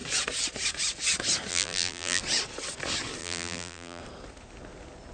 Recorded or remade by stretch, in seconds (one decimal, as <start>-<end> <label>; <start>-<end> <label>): 0.0-1.5 recorded; 1.5-2.2 remade; 2.2-3.2 recorded; 3.2-4.0 remade; 4.0-5.1 recorded